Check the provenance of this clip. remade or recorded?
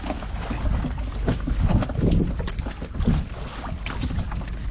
recorded